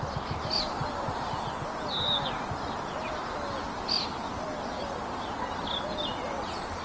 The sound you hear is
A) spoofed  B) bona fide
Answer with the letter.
B